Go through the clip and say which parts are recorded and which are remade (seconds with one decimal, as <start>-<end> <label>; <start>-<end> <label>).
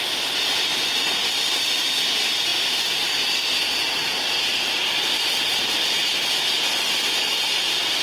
0.0-8.0 recorded